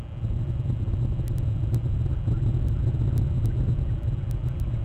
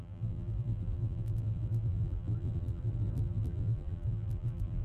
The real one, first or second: first